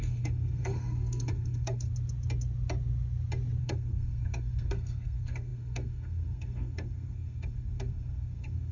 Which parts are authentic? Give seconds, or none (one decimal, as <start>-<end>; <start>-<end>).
1.9-3.6